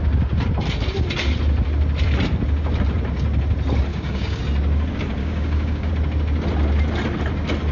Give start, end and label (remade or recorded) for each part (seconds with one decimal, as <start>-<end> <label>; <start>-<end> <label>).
0.0-3.9 recorded; 3.9-4.4 remade; 4.4-5.2 recorded; 5.2-5.9 remade; 5.9-7.7 recorded